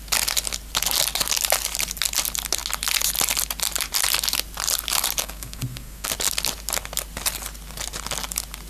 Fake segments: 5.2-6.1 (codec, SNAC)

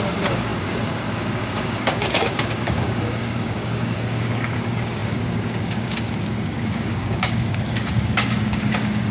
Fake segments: 0.0-9.1 (codec, DAC)

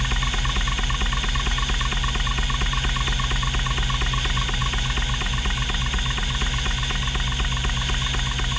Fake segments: none

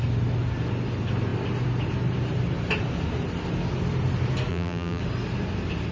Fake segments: 4.5-5.0 (vocoder, BigVGAN v2)